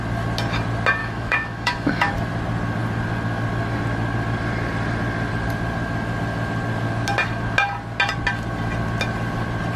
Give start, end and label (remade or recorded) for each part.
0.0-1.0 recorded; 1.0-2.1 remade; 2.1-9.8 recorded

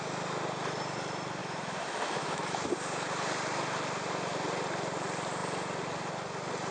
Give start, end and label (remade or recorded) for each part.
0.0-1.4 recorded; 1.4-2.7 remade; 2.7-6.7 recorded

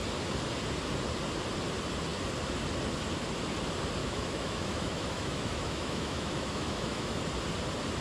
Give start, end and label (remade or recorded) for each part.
0.0-4.0 recorded; 4.0-7.2 remade; 7.2-8.0 recorded

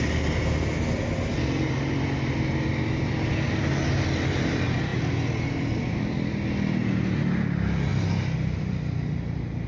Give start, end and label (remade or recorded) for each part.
0.0-9.7 recorded